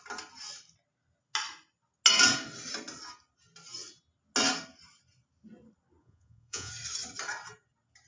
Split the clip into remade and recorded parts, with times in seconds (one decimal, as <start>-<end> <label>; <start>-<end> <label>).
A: 0.0-6.0 recorded; 6.0-6.7 remade; 6.7-8.1 recorded